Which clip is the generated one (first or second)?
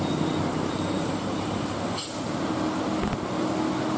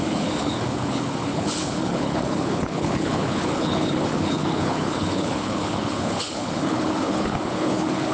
second